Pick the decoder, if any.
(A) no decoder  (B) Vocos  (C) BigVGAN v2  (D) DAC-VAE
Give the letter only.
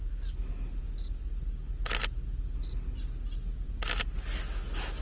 A